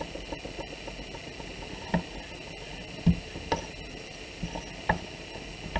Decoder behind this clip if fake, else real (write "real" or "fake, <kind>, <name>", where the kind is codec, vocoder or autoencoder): real